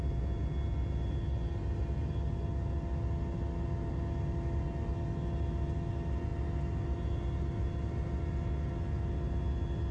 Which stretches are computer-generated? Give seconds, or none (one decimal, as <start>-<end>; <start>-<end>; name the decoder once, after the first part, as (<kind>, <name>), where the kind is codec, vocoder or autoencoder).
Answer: none